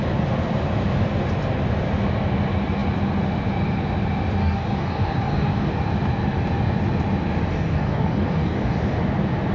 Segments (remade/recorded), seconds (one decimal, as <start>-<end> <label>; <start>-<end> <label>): 0.0-4.4 recorded; 4.4-5.7 remade; 5.7-7.5 recorded; 7.5-8.8 remade; 8.8-9.5 recorded